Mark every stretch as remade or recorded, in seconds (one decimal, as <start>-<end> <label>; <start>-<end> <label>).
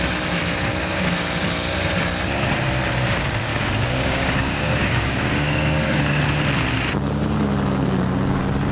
0.0-3.5 recorded; 3.5-6.2 remade; 6.2-8.7 recorded